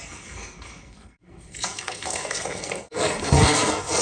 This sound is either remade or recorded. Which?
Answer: remade